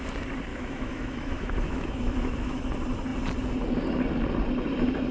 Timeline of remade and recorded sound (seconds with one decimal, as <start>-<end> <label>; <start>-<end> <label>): 0.0-0.5 recorded; 0.5-2.6 remade; 2.6-5.1 recorded